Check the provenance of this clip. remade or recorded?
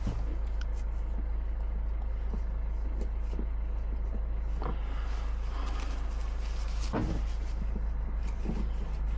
recorded